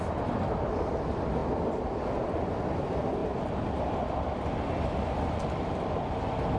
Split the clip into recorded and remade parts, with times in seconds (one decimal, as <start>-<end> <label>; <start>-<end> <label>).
0.0-6.6 recorded